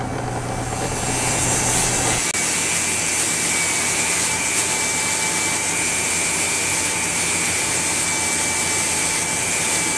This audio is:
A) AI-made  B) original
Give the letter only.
B